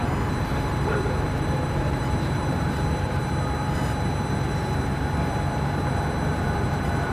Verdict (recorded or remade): remade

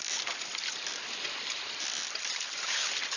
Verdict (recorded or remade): remade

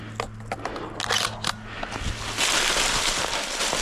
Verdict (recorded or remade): recorded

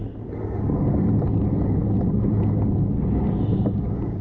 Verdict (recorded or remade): recorded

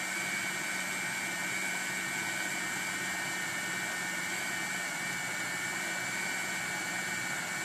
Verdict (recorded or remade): recorded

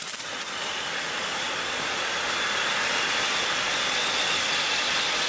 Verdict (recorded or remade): recorded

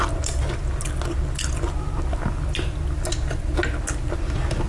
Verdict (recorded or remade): recorded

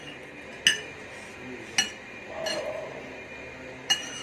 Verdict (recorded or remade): recorded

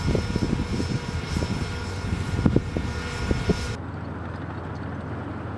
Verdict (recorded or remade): recorded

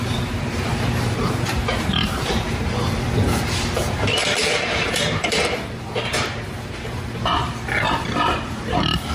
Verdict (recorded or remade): remade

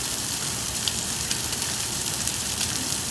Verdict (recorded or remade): remade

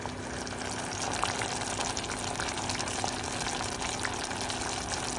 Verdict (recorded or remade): recorded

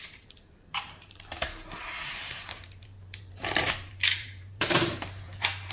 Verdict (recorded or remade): remade